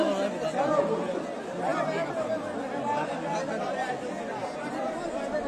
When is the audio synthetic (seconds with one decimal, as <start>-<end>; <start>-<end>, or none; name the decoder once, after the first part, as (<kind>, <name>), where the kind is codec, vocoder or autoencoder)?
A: none